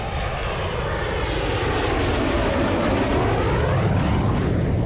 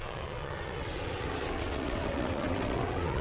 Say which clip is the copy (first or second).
second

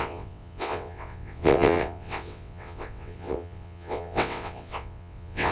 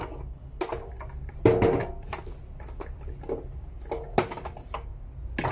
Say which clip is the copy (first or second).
first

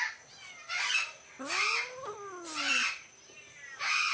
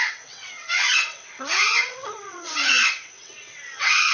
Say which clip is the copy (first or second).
second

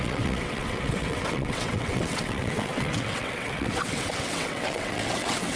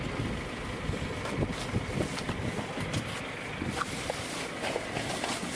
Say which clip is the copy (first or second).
first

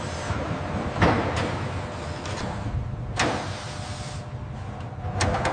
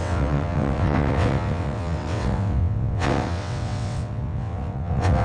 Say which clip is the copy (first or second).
second